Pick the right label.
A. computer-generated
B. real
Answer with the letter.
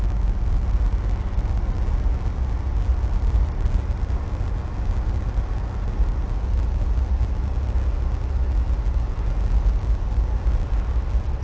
B